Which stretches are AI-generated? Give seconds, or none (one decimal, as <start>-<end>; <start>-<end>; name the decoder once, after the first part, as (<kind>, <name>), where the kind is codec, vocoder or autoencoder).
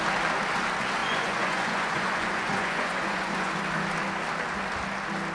1.0-3.6 (vocoder, Vocos)